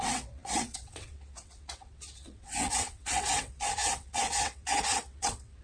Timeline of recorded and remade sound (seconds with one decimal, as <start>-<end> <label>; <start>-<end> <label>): 0.0-5.6 remade

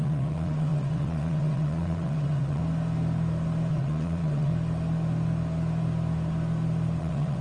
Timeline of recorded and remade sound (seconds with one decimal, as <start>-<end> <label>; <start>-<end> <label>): 0.0-2.6 remade; 2.6-3.7 recorded; 3.7-4.5 remade; 4.5-7.0 recorded; 7.0-7.4 remade

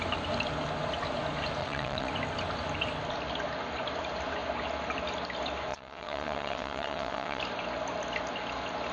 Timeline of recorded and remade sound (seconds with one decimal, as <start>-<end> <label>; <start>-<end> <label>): 0.0-1.6 recorded; 1.6-2.1 remade; 2.1-5.7 recorded; 5.7-7.4 remade; 7.4-8.9 recorded

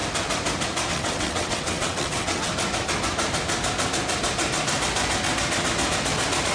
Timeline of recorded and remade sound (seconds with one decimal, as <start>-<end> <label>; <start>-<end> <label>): 0.0-0.9 recorded; 0.9-2.5 remade; 2.5-6.5 recorded

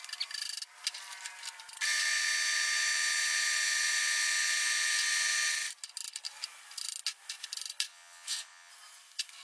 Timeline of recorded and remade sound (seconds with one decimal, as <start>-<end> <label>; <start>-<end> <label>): 0.0-7.9 recorded; 7.9-8.7 remade; 8.7-9.4 recorded

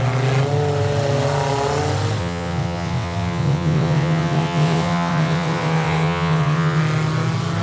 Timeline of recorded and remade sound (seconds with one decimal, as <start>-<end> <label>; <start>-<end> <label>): 0.0-2.2 recorded; 2.2-6.8 remade; 6.8-7.6 recorded